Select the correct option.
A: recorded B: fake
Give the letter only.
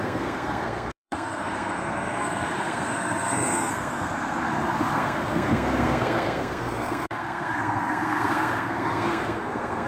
B